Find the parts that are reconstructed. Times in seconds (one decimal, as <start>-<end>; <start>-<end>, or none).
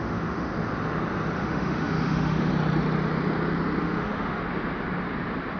0.0-0.5; 1.4-2.5; 3.8-4.4